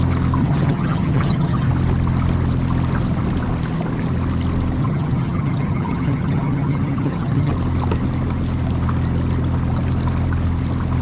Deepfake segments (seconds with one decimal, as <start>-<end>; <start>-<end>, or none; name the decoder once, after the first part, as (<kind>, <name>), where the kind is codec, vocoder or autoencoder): 0.4-1.7 (vocoder, HiFi-GAN); 4.8-7.5